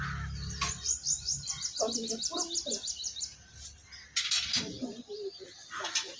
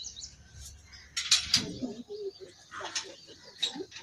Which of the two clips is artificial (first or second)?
second